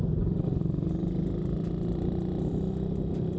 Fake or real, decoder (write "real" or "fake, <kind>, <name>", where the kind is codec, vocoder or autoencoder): real